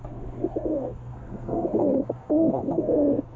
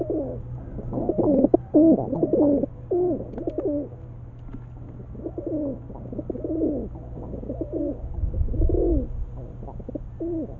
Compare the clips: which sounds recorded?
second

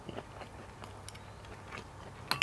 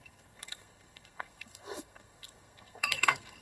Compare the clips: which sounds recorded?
first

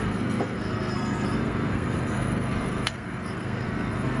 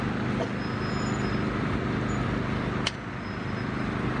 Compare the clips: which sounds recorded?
second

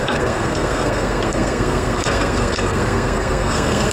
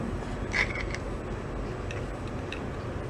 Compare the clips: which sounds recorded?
second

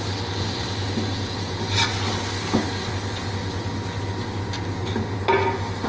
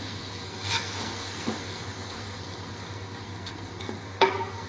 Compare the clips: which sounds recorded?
first